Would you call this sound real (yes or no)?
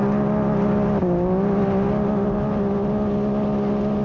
yes